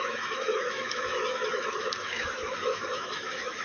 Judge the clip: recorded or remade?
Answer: remade